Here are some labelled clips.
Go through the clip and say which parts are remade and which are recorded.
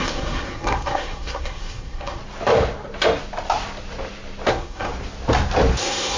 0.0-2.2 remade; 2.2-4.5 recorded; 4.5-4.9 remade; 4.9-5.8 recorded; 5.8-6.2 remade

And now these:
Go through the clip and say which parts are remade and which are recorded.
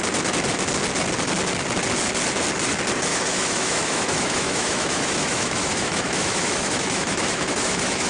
0.0-3.1 recorded; 3.1-8.1 remade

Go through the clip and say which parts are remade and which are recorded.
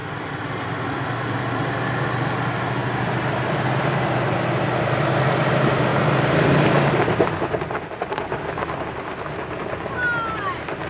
0.0-1.8 remade; 1.8-2.8 recorded; 2.8-5.2 remade; 5.2-5.9 recorded; 5.9-6.9 remade; 6.9-10.9 recorded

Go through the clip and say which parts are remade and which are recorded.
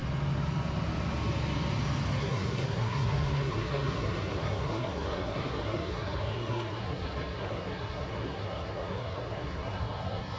0.0-2.2 recorded; 2.2-10.4 remade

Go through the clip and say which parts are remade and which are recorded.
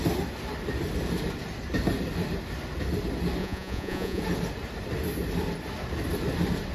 0.0-3.4 recorded; 3.4-4.2 remade; 4.2-6.7 recorded